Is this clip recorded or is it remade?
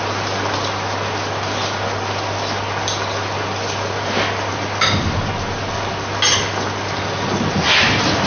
recorded